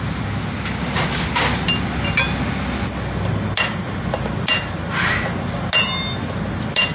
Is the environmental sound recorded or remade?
recorded